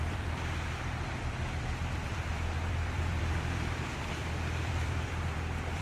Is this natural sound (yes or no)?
no